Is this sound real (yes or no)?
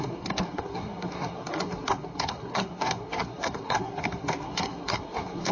no